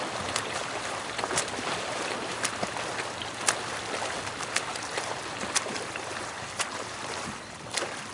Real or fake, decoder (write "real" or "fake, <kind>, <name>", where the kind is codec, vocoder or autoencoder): fake, vocoder, BigVGAN v2